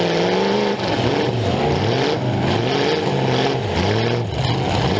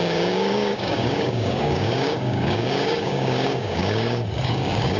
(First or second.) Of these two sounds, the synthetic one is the second